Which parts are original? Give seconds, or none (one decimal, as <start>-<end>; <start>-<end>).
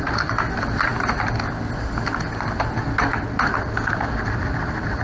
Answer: 0.0-5.0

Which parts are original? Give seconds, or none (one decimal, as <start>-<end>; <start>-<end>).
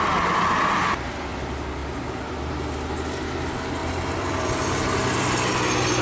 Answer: 0.0-3.8; 4.8-6.0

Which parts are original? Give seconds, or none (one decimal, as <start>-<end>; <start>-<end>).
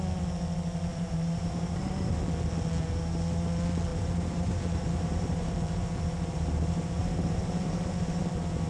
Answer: 0.0-0.9; 2.2-3.9; 8.2-8.7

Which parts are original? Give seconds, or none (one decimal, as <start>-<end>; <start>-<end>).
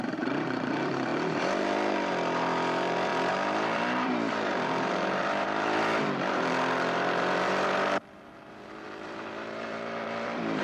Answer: none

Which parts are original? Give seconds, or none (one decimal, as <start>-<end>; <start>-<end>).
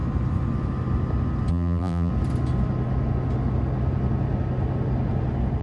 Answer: 0.0-1.5; 2.1-5.6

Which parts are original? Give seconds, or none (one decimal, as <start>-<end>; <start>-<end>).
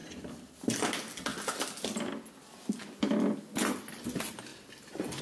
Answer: 0.6-4.5